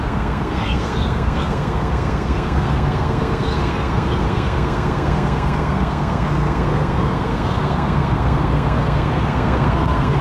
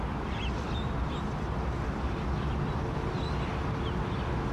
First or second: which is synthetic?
first